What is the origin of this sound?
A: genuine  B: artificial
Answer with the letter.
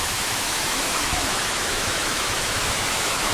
B